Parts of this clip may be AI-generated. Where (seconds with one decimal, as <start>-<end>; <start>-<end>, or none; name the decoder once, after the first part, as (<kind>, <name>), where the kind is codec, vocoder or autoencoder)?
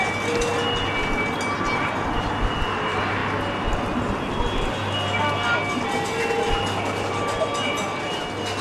none